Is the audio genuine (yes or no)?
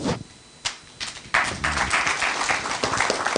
yes